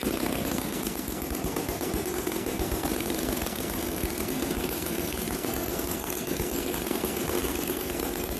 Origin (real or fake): fake